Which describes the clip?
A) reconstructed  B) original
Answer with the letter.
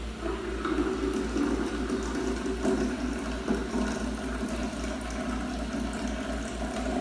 B